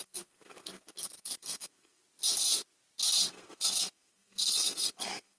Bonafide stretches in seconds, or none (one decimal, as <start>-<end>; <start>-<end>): 2.0-3.3